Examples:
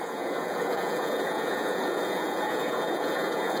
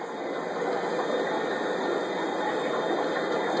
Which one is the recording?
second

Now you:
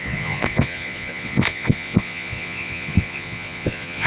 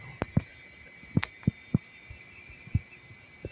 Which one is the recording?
second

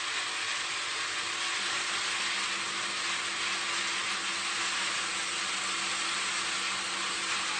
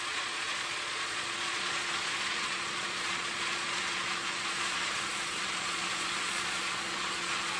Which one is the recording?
first